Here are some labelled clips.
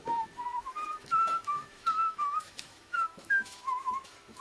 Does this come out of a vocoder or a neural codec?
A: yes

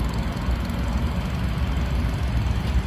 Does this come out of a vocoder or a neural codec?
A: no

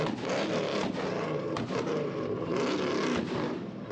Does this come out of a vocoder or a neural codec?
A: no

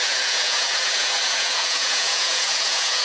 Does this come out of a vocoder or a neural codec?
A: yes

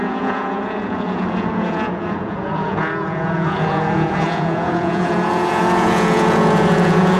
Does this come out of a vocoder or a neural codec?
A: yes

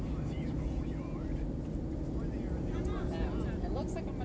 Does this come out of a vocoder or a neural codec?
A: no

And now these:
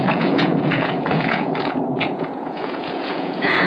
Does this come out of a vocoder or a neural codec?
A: yes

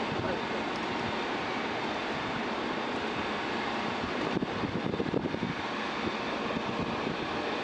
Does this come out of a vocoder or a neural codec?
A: no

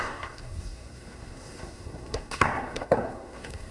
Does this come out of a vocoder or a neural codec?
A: yes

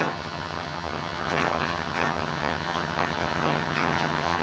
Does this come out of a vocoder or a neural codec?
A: yes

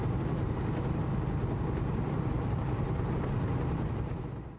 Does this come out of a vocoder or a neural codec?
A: no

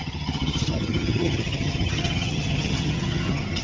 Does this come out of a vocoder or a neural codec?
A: yes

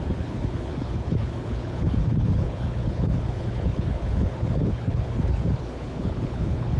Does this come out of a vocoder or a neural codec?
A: yes